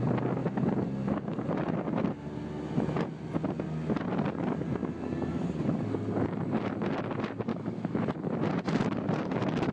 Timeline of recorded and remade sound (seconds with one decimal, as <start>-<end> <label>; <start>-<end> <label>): 0.0-7.5 recorded; 7.5-8.1 remade; 8.1-9.7 recorded